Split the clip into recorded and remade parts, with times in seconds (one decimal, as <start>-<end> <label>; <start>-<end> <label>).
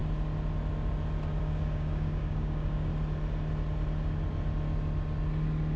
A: 0.0-1.4 recorded; 1.4-2.9 remade; 2.9-5.8 recorded